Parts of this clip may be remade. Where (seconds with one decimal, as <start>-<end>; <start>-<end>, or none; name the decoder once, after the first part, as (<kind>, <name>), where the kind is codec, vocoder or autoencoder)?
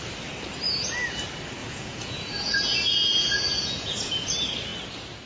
1.6-4.3 (vocoder, Vocos)